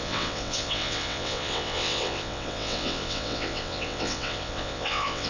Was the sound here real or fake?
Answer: fake